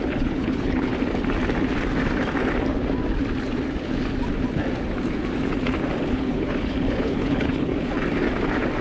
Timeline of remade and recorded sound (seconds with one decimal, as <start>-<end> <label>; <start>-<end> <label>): 0.0-0.9 remade; 0.9-6.1 recorded; 6.1-7.7 remade; 7.7-8.8 recorded

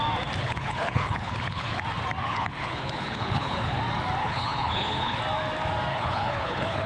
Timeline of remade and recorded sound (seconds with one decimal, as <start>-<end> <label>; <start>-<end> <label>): 0.0-0.4 recorded; 0.4-1.8 remade; 1.8-2.2 recorded; 2.2-3.8 remade; 3.8-4.2 recorded; 4.2-5.2 remade; 5.2-5.9 recorded; 5.9-6.9 remade

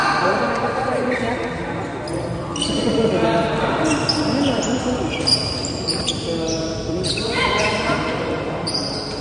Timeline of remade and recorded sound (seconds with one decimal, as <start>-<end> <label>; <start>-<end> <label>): 0.0-9.2 recorded

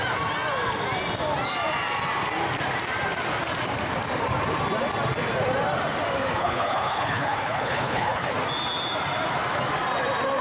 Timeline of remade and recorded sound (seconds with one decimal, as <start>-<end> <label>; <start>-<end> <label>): 0.0-6.4 recorded; 6.4-8.3 remade; 8.3-10.4 recorded